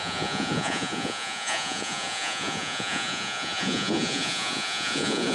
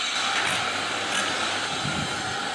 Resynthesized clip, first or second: first